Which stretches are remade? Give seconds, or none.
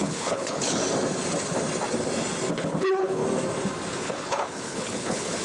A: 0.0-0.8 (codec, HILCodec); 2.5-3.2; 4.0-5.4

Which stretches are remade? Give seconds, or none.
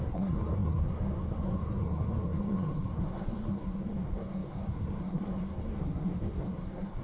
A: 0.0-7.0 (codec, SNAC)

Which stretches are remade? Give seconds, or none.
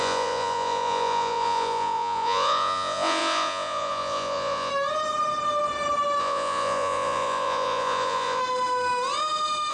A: 0.0-4.7 (vocoder, Vocos); 6.2-8.4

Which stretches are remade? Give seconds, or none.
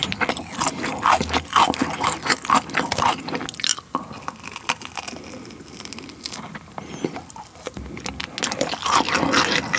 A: none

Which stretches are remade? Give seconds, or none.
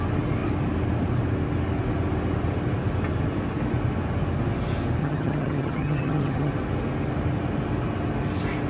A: 5.0-6.5 (vocoder, HiFi-GAN)